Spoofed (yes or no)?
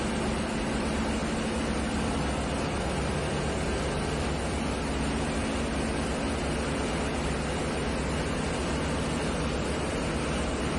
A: no